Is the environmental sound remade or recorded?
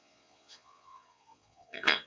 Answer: remade